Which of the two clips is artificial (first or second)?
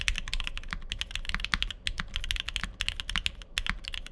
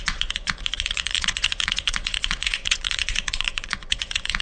second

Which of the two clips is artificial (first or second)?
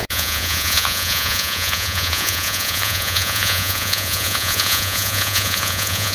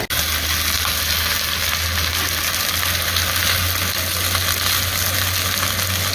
first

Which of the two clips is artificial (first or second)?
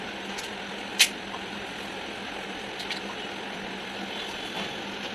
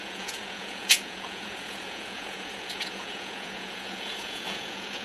second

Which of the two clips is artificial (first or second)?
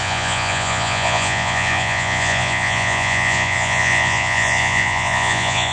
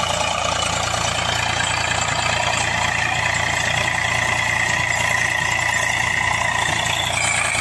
first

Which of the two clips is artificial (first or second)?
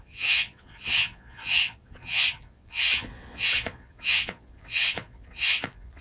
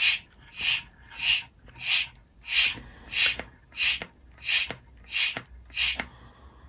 first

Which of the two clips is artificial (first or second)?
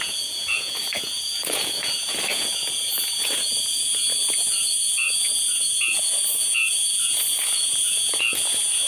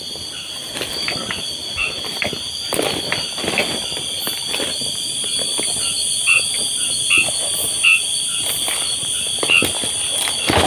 first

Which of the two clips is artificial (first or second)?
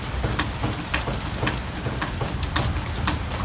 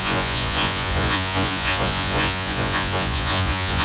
second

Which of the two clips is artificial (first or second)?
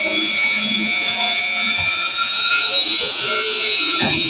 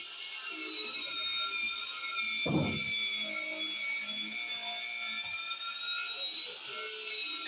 first